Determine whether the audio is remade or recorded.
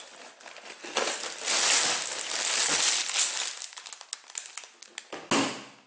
recorded